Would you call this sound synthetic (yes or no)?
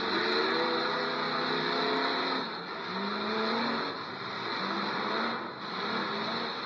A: no